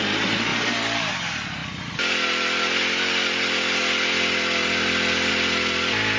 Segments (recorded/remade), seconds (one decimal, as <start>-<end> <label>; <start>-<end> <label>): 0.0-6.2 recorded